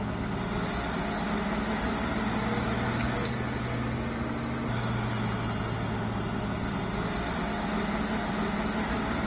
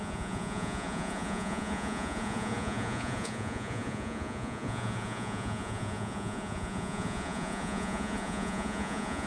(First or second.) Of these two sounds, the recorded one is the first